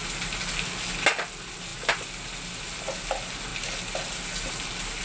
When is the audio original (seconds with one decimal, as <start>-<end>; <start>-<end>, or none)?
0.0-5.0